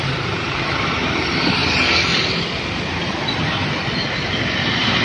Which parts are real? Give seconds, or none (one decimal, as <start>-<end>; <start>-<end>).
1.6-4.6